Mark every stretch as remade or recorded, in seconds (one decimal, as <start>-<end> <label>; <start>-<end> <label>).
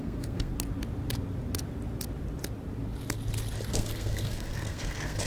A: 0.0-0.5 remade; 0.5-3.7 recorded; 3.7-5.3 remade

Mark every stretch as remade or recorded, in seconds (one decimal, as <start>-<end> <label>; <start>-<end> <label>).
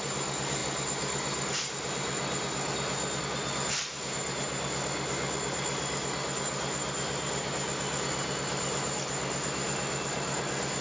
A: 0.0-10.8 recorded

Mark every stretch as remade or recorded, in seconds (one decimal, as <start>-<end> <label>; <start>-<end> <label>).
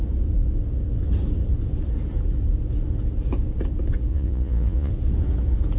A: 0.0-4.1 recorded; 4.1-4.9 remade; 4.9-5.8 recorded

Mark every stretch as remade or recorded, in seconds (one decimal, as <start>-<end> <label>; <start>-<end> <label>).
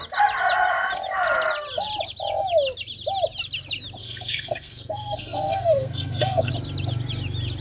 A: 0.0-4.0 recorded; 4.0-6.5 remade; 6.5-7.6 recorded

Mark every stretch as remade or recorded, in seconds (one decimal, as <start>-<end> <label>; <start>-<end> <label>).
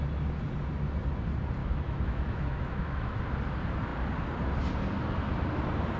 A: 0.0-1.6 recorded; 1.6-3.2 remade; 3.2-6.0 recorded